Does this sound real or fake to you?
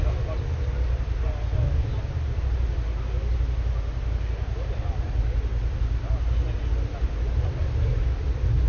real